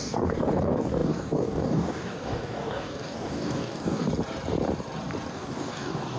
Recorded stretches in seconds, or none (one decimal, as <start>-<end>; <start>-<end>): 4.1-5.3